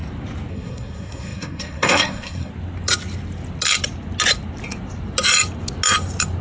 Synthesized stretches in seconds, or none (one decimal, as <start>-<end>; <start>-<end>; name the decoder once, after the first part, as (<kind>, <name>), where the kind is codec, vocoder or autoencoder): 0.5-2.5 (codec, SNAC)